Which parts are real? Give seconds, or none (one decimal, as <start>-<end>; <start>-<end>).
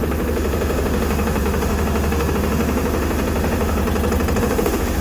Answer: 3.8-4.4